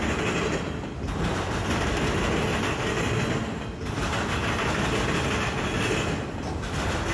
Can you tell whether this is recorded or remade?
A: recorded